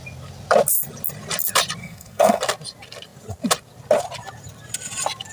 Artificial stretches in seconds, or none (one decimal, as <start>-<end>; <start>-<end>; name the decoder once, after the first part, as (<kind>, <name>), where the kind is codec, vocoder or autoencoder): 1.8-2.4 (codec, SNAC)